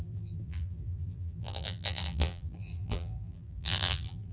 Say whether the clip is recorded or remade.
remade